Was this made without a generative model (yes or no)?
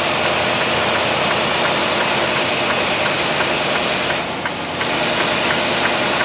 yes